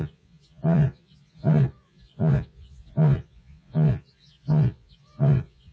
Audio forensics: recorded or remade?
remade